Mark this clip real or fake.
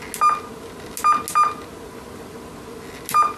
real